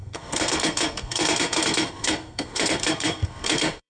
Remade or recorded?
remade